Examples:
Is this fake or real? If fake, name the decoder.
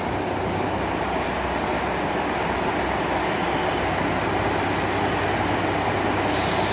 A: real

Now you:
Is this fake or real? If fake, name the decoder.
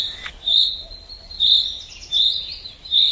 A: real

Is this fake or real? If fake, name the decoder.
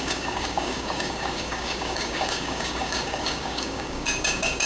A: fake, codec, DAC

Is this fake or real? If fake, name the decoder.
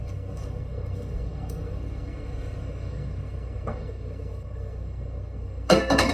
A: fake, codec, SNAC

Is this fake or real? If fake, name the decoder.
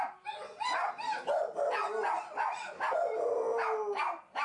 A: real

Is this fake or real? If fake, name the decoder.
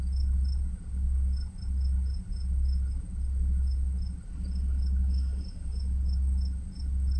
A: real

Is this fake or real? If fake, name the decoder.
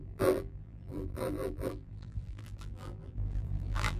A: fake, vocoder, BigVGAN v2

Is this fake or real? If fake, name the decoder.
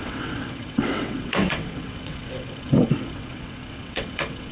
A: fake, vocoder, WaveNeXt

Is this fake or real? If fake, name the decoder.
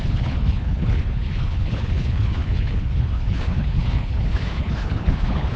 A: fake, codec, HILCodec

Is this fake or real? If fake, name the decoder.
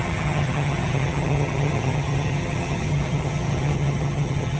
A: fake, vocoder, HiFi-GAN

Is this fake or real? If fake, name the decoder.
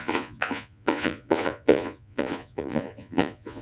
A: fake, vocoder, Vocos